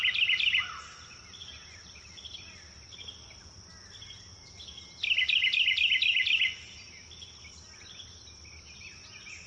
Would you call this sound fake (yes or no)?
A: no